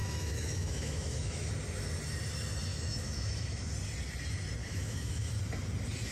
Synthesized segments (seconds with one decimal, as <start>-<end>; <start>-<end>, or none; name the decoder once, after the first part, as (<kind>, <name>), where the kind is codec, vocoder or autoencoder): 0.0-1.5 (autoencoder, DAC-VAE); 2.7-3.7; 4.6-5.3